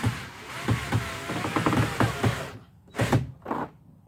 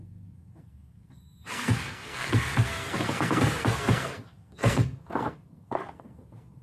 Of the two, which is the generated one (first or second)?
second